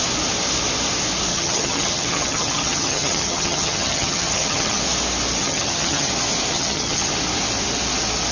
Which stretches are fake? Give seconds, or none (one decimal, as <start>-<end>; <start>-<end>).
1.3-4.8; 5.4-6.1; 6.5-7.1